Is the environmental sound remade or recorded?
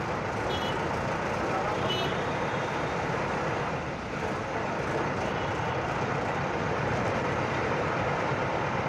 remade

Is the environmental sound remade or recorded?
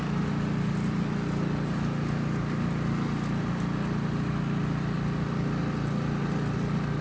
recorded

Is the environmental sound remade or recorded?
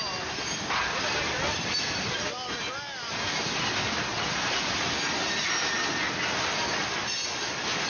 recorded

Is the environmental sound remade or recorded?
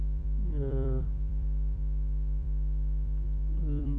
remade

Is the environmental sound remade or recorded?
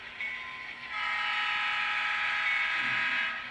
recorded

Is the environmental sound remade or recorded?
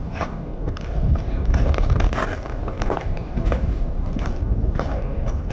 remade